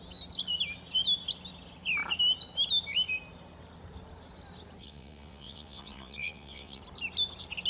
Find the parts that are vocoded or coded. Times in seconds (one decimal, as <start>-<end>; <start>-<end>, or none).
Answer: 4.8-6.8